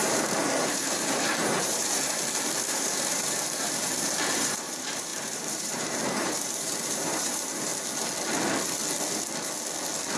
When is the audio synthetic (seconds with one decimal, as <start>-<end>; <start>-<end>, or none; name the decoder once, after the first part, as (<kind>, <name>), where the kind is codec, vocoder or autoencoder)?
0.0-2.1 (vocoder, BigVGAN v2); 2.7-7.7